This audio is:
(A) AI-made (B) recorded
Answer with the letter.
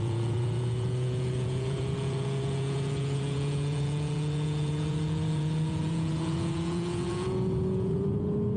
A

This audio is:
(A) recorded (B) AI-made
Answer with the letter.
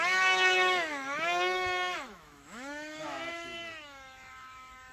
B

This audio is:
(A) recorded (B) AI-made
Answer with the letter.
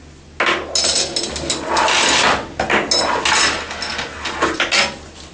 A